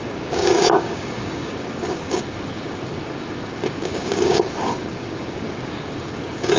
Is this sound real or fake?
fake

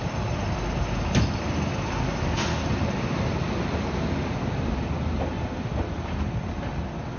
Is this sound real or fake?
real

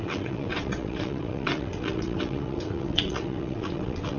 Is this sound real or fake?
fake